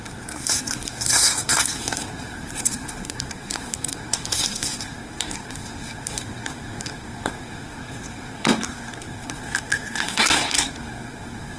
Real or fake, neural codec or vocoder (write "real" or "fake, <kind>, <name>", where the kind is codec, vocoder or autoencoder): fake, codec, SNAC